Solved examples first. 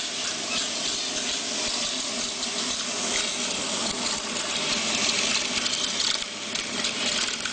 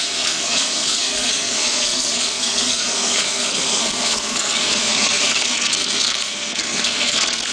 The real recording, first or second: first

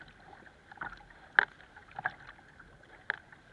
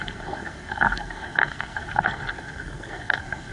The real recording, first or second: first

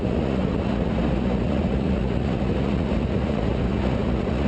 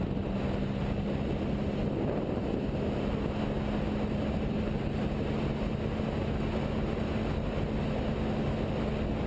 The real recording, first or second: second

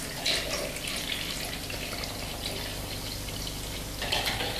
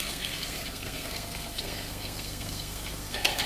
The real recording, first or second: first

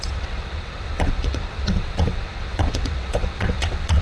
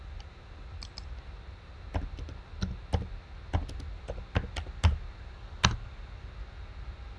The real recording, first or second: second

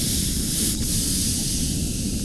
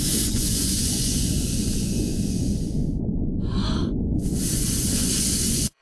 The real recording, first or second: first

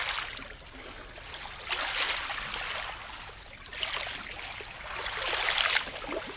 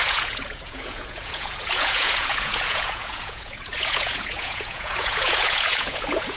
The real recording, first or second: first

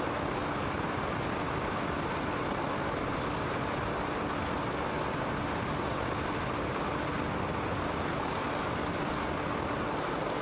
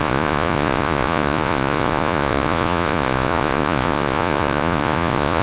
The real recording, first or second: first